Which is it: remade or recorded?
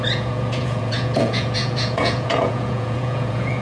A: remade